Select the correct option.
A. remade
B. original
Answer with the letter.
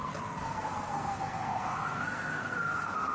A